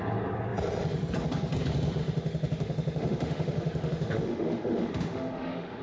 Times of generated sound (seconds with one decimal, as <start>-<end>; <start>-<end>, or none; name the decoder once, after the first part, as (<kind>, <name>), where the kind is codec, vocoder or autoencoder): 2.0-5.8 (autoencoder, DAC-VAE)